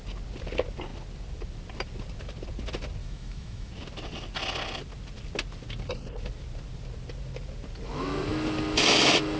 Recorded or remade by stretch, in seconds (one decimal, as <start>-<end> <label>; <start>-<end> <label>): 0.0-3.0 recorded; 3.0-3.7 remade; 3.7-9.4 recorded